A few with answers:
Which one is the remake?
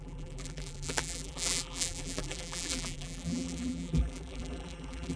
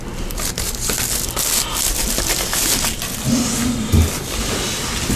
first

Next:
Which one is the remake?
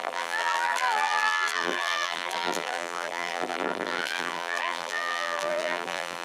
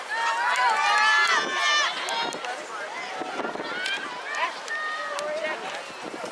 first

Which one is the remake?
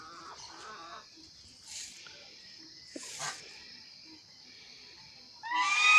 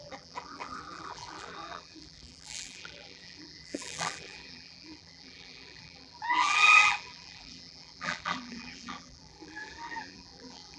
second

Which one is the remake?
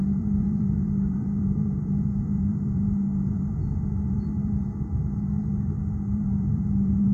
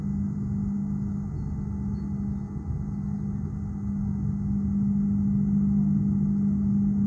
first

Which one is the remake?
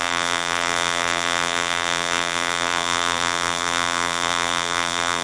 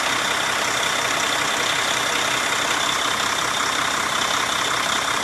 first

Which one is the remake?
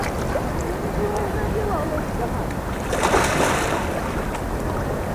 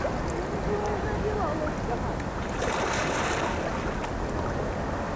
first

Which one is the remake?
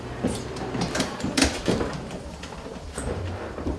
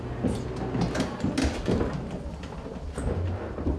first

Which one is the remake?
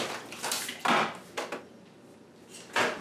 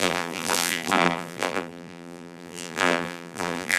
second